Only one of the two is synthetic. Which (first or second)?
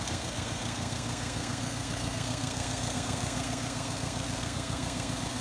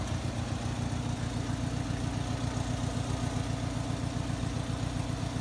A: first